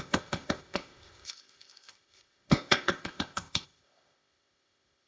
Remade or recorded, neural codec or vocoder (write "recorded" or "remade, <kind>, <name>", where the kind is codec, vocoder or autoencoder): remade, codec, ZipCodec